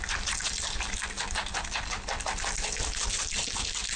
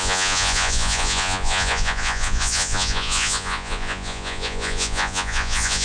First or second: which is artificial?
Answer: second